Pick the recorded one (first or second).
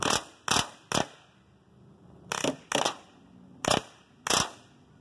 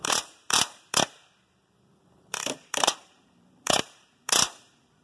first